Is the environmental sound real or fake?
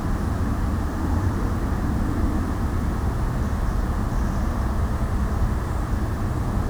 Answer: real